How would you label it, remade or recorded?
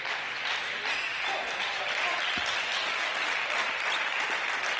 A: recorded